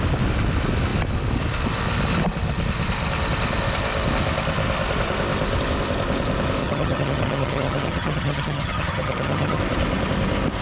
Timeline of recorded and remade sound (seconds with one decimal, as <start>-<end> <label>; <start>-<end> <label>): 0.0-6.6 recorded; 6.6-9.6 remade; 9.6-10.6 recorded